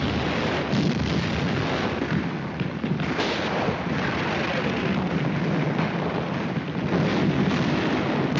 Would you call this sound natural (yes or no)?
no